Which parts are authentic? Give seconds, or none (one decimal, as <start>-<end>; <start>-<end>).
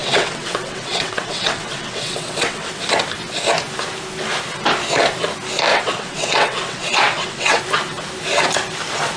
2.8-5.7; 7.6-9.2